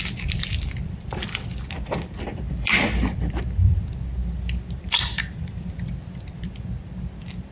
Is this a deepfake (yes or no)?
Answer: yes